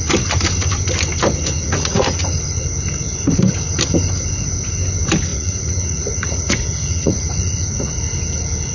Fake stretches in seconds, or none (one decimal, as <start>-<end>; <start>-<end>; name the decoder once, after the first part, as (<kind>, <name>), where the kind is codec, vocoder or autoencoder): 1.6-2.2 (vocoder, Vocos); 5.3-8.0